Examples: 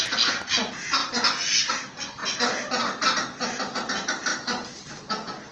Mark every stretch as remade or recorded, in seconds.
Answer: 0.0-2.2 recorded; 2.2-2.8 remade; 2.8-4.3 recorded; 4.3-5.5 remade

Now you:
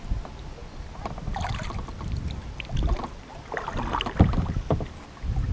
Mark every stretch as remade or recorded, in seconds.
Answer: 0.0-0.6 recorded; 0.6-3.2 remade; 3.2-5.5 recorded

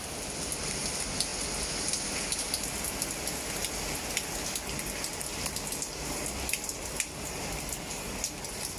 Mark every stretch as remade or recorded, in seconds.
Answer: 0.0-8.8 recorded

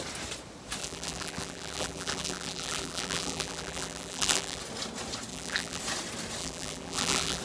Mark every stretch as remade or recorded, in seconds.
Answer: 0.0-0.8 recorded; 0.8-4.6 remade; 4.6-5.3 recorded; 5.3-5.8 remade; 5.8-6.4 recorded; 6.4-7.4 remade

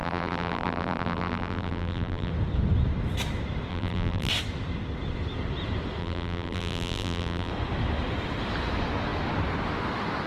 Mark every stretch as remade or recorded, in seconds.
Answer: 0.0-2.3 remade; 2.3-3.7 recorded; 3.7-4.3 remade; 4.3-6.0 recorded; 6.0-7.5 remade; 7.5-10.3 recorded

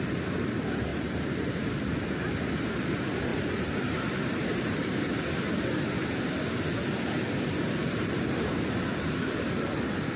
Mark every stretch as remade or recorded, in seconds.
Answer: 0.0-0.9 recorded; 0.9-1.6 remade; 1.6-3.3 recorded; 3.3-5.0 remade; 5.0-7.8 recorded; 7.8-8.5 remade; 8.5-10.2 recorded

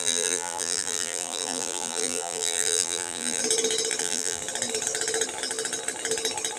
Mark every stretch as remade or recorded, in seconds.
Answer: 0.0-3.4 remade; 3.4-4.0 recorded; 4.0-4.4 remade; 4.4-6.6 recorded

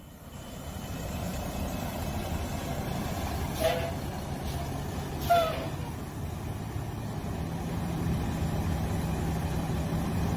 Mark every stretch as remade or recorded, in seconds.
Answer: 0.0-10.4 recorded